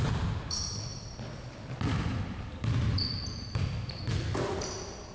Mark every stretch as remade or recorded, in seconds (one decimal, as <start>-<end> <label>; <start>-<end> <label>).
0.0-0.9 recorded; 0.9-4.0 remade; 4.0-5.1 recorded